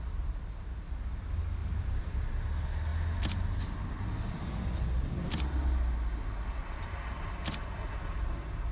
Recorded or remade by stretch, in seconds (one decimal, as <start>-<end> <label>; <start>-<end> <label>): 0.0-1.6 recorded; 1.6-2.3 remade; 2.3-8.7 recorded